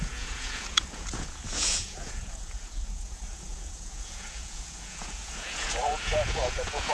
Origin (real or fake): fake